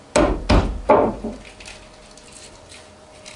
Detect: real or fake real